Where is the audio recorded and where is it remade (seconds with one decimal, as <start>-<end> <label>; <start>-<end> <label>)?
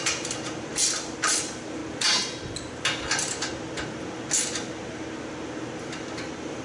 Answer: 0.0-1.8 remade; 1.8-5.8 recorded; 5.8-6.6 remade